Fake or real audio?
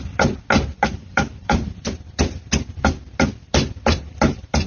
real